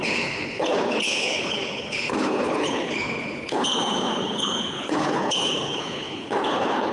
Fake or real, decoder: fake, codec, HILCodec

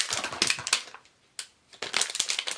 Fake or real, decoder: real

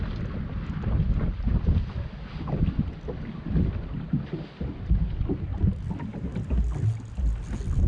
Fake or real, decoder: real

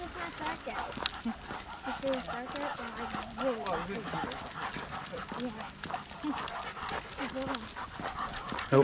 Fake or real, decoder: real